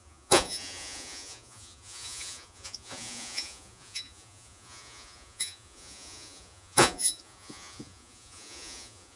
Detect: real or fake fake